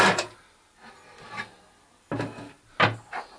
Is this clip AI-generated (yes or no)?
no